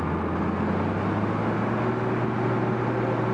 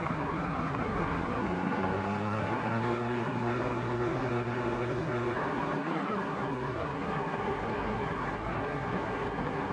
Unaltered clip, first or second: first